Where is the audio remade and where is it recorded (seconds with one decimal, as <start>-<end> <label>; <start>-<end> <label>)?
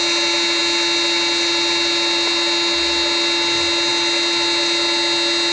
0.0-5.5 recorded